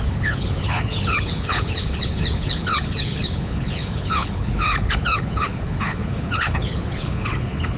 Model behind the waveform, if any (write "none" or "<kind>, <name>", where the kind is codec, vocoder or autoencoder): codec, HILCodec